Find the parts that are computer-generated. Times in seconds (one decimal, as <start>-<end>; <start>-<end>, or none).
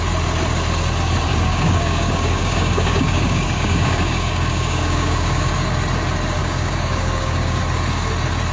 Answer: 1.3-5.5; 6.4-7.6